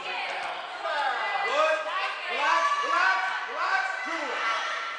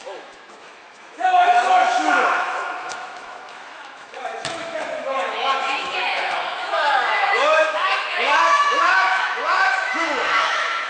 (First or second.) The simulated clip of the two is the second